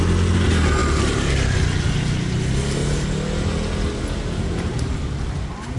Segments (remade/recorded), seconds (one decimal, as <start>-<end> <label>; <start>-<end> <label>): 0.0-5.8 recorded